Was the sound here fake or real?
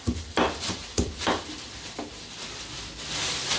fake